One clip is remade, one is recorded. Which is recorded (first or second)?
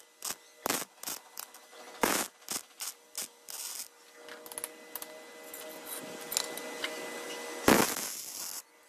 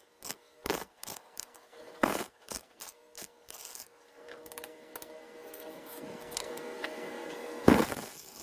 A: first